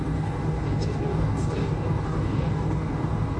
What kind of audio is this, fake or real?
fake